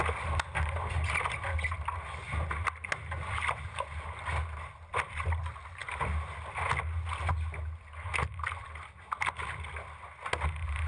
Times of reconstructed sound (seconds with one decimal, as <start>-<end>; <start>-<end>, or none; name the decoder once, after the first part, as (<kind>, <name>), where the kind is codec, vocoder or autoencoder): none